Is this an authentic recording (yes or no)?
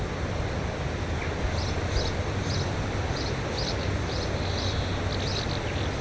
yes